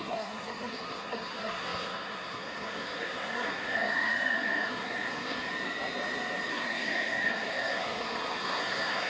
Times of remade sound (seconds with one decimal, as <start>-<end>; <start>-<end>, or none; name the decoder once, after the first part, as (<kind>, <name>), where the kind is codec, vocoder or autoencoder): 0.0-5.5 (codec, SNAC); 6.5-9.1